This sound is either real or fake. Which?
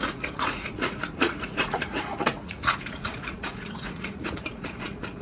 fake